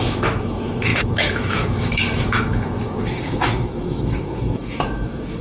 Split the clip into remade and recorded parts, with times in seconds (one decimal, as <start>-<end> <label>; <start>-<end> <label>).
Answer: 0.0-5.4 remade